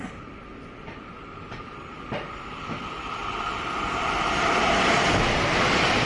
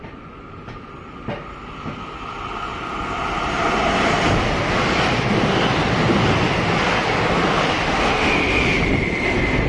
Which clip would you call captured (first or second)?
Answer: second